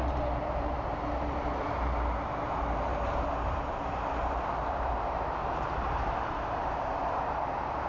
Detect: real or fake fake